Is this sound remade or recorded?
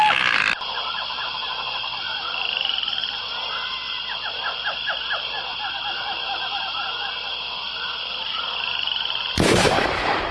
remade